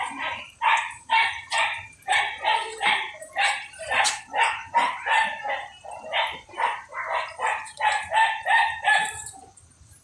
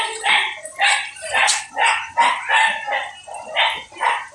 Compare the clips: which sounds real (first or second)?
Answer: second